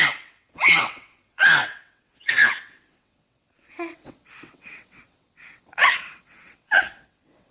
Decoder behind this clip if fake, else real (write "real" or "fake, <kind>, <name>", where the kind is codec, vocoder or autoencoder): fake, vocoder, WaveNeXt